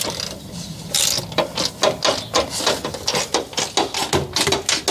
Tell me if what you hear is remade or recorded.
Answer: recorded